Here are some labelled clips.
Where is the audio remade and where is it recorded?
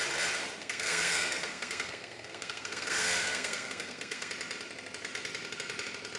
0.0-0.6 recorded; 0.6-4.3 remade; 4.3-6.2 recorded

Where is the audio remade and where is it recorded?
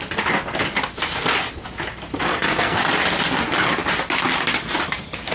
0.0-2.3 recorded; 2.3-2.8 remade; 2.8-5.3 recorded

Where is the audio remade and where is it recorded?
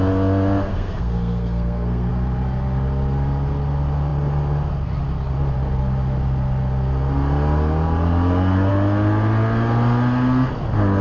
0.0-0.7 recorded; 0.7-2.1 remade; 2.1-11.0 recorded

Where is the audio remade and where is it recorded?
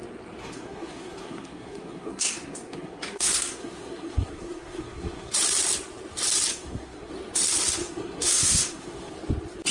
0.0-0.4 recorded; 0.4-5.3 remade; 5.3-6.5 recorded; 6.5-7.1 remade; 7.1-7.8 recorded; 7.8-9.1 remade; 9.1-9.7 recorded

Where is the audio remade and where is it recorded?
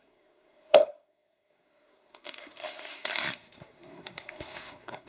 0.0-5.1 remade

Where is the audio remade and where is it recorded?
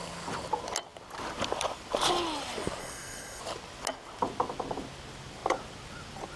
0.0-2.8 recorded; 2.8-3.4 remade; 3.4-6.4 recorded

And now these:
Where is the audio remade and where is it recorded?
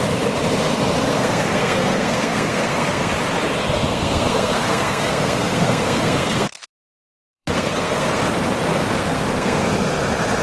0.0-1.1 recorded; 1.1-3.1 remade; 3.1-3.9 recorded; 3.9-8.2 remade; 8.2-8.7 recorded; 8.7-9.6 remade; 9.6-10.4 recorded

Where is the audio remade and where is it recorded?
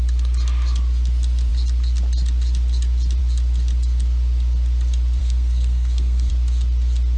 0.0-5.2 recorded; 5.2-6.3 remade; 6.3-7.2 recorded